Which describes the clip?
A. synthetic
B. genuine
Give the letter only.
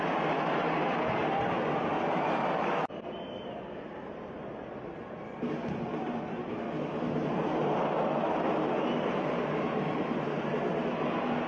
B